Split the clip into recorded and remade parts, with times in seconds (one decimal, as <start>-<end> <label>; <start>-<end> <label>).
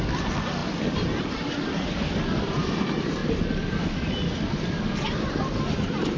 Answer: 0.0-0.6 remade; 0.6-2.4 recorded; 2.4-3.2 remade; 3.2-6.2 recorded